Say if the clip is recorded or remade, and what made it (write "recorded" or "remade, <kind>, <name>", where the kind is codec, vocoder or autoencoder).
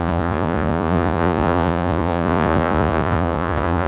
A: remade, vocoder, Vocos